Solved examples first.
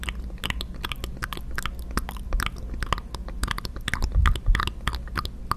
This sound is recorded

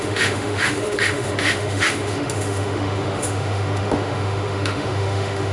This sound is remade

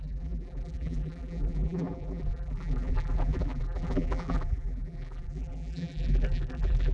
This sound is remade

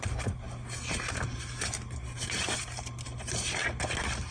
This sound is recorded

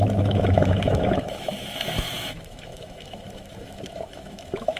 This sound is remade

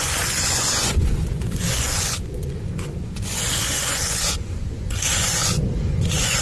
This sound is remade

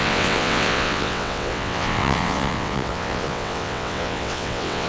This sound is remade